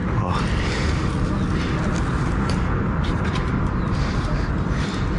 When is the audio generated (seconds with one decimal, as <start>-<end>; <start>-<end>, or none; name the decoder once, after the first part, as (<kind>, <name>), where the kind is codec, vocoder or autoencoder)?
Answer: none